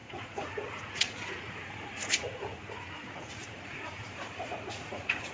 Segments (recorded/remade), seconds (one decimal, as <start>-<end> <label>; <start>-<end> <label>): 0.0-5.3 remade